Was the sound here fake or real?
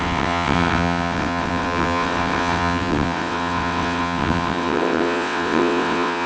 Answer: fake